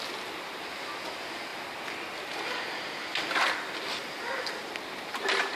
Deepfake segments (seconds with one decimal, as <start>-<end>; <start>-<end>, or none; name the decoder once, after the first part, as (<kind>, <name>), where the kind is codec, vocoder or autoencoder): 0.0-5.6 (vocoder, BigVGAN v2)